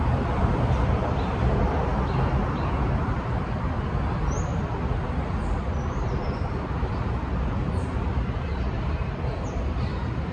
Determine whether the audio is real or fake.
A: fake